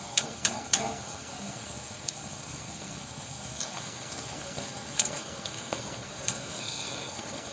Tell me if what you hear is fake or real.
fake